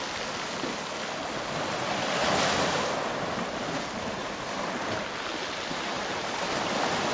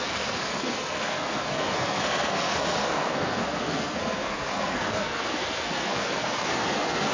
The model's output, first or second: second